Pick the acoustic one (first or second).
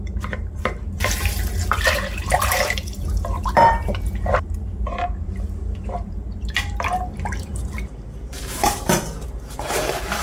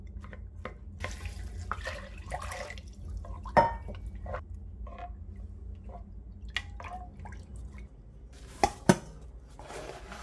second